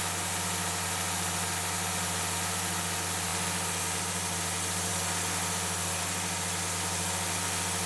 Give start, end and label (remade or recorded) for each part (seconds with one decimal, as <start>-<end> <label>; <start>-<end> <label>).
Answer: 0.0-7.9 recorded